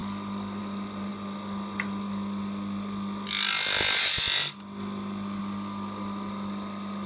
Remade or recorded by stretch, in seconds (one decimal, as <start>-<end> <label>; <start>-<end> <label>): 0.0-7.1 recorded